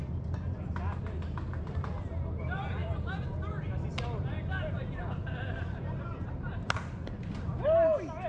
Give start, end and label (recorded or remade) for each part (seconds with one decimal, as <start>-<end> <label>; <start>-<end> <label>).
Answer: 0.0-8.3 recorded